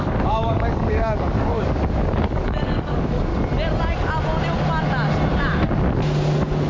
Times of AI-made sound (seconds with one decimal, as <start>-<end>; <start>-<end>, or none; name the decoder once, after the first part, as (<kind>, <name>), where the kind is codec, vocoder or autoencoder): 0.0-3.3 (codec, DAC)